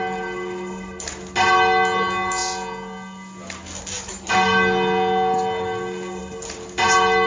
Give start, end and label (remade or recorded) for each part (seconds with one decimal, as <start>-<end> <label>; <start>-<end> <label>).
0.0-7.3 recorded